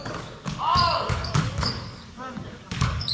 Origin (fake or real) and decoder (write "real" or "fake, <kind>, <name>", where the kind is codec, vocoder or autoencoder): fake, codec, DAC